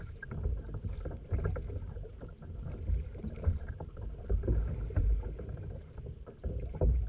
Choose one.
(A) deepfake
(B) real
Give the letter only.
A